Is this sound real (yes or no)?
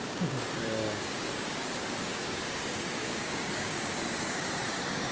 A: no